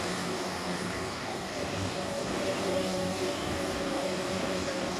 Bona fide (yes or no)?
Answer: no